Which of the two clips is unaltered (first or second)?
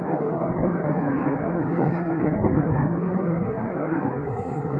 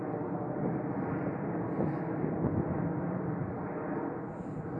second